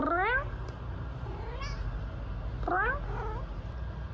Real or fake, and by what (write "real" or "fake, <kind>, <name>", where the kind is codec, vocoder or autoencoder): real